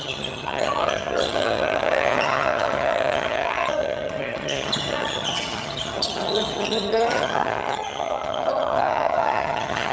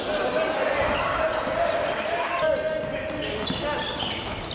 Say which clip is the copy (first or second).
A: first